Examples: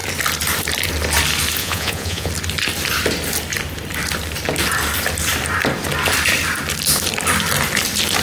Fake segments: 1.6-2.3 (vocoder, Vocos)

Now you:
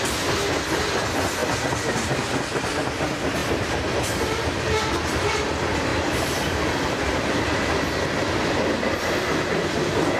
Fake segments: 1.4-2.4 (vocoder, BigVGAN v2); 5.9-10.2

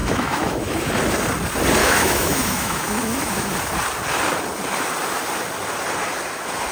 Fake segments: 0.0-0.9 (autoencoder, DAC-VAE); 1.8-3.5